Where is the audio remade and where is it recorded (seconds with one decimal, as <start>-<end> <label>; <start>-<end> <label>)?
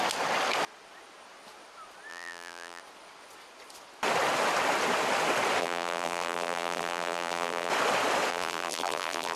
0.0-2.1 recorded; 2.1-2.8 remade; 2.8-5.6 recorded; 5.6-7.7 remade; 7.7-8.3 recorded; 8.3-9.4 remade